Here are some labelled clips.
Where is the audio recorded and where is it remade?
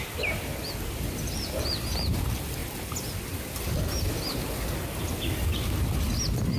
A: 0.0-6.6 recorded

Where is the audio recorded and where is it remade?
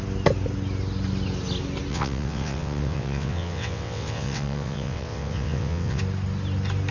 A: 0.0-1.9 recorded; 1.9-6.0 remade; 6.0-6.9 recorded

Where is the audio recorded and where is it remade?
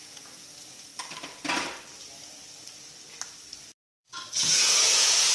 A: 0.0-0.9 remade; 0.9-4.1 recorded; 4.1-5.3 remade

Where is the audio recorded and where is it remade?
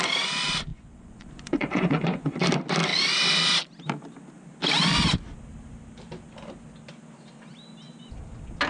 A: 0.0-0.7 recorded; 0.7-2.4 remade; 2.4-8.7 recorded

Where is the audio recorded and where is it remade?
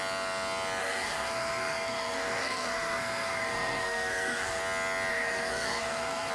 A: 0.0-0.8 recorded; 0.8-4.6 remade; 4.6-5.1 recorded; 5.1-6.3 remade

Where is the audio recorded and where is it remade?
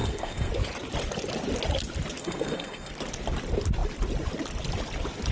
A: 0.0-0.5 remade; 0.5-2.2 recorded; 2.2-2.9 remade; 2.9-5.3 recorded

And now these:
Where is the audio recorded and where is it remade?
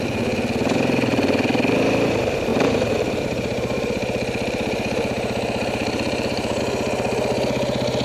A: 0.0-2.5 recorded; 2.5-6.6 remade; 6.6-8.0 recorded